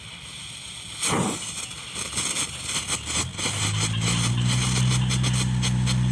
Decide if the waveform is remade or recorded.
recorded